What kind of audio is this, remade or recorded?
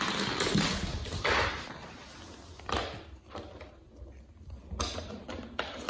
recorded